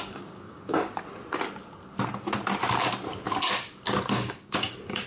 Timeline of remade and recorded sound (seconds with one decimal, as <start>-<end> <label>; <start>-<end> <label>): 0.0-0.9 remade; 0.9-4.0 recorded; 4.0-5.1 remade